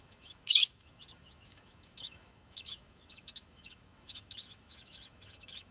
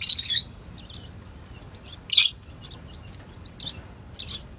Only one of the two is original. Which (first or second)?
second